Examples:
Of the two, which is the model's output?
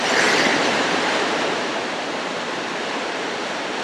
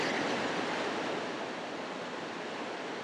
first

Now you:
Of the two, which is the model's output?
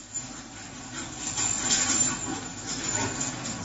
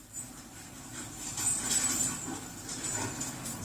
second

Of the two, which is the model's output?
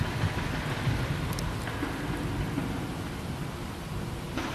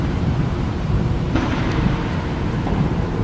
second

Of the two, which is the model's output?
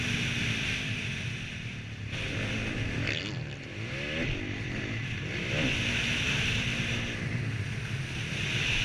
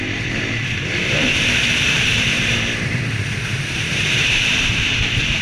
second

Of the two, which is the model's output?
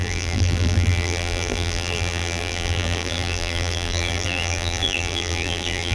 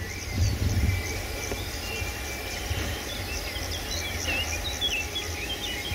first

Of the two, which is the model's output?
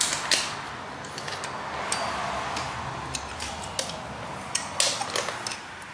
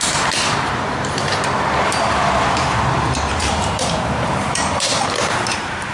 second